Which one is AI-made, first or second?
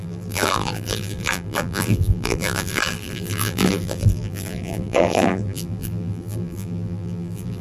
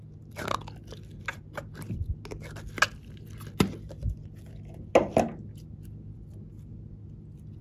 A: first